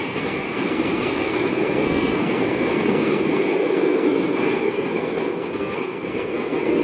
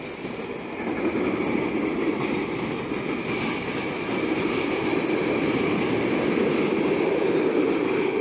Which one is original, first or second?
second